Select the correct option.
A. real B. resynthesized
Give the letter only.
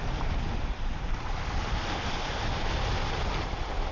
A